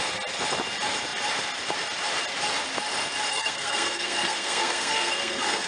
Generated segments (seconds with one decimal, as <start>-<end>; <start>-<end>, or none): 3.3-5.7